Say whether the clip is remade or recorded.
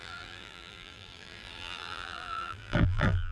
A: remade